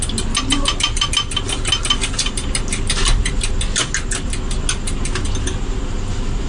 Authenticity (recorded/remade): recorded